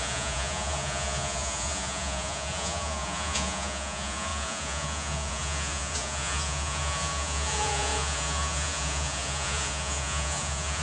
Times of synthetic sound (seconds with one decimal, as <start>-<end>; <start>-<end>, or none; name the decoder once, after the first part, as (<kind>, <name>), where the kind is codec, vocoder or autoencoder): 0.0-10.8 (vocoder, Vocos)